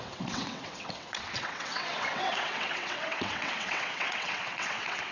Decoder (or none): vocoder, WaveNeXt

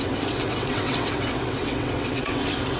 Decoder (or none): vocoder, WaveNeXt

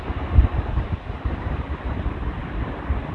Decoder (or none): none